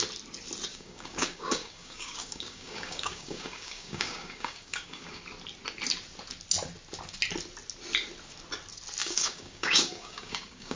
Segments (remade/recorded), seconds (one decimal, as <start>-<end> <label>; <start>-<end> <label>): 0.0-0.7 recorded; 0.7-5.2 remade; 5.2-9.0 recorded; 9.0-10.8 remade